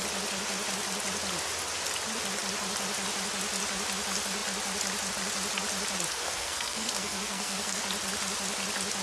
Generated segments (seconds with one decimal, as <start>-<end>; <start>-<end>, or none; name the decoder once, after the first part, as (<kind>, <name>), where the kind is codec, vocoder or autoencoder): 6.1-7.8 (codec, SNAC)